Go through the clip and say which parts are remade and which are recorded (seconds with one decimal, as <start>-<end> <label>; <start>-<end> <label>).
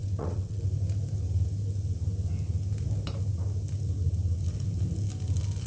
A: 0.0-0.6 remade; 0.6-5.7 recorded